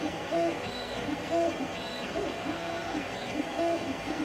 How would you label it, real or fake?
fake